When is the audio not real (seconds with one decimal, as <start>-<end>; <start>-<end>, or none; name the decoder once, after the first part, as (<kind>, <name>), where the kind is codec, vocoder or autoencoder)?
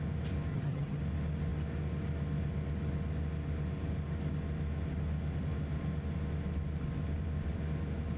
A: 0.5-1.0 (vocoder, HiFi-GAN)